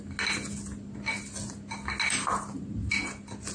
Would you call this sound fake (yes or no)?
no